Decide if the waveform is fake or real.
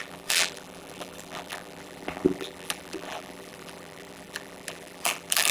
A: fake